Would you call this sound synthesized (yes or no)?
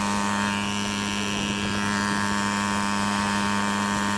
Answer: no